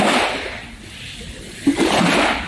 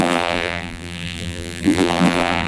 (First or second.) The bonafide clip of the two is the first